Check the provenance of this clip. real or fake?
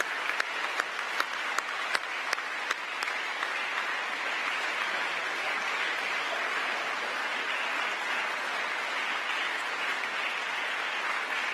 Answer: real